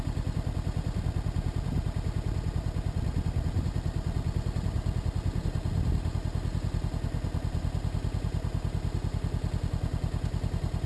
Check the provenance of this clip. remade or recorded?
recorded